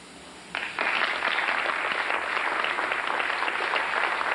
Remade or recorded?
recorded